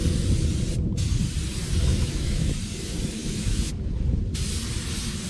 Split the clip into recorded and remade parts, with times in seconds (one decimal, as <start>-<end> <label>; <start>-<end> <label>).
0.0-1.9 recorded; 1.9-2.5 remade; 2.5-3.2 recorded; 3.2-3.7 remade; 3.7-5.3 recorded